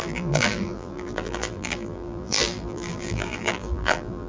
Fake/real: fake